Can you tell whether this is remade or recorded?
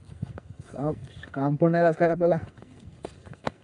remade